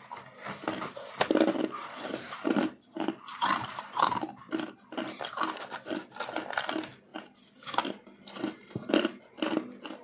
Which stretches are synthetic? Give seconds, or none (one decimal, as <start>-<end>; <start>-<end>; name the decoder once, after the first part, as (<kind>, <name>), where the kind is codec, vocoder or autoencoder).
1.8-4.7 (vocoder, BigVGAN v2)